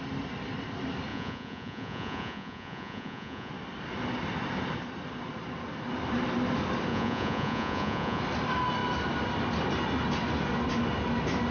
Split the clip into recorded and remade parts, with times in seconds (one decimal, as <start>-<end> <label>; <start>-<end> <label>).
0.0-1.1 recorded; 1.1-3.5 remade; 3.5-6.9 recorded; 6.9-8.2 remade; 8.2-11.5 recorded